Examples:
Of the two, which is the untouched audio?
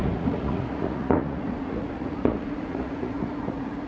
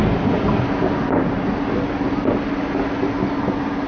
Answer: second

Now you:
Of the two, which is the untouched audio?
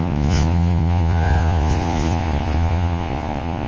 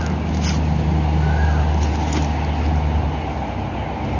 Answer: second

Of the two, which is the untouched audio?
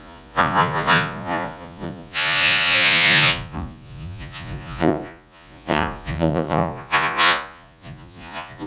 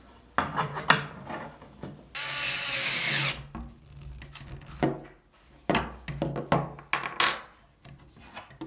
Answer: second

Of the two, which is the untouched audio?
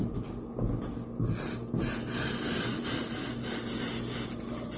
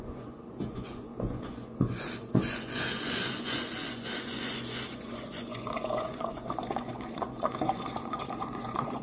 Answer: first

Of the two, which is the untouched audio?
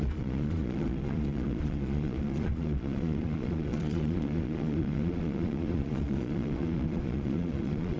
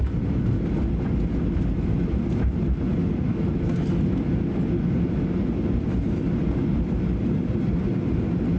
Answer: second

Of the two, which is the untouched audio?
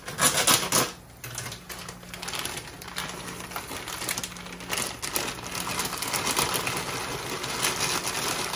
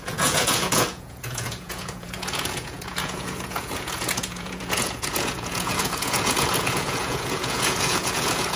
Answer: first